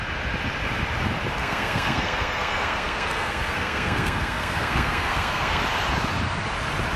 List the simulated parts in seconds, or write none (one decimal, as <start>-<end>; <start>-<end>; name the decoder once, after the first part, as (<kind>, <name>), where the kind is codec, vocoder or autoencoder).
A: 1.4-5.6 (codec, SNAC)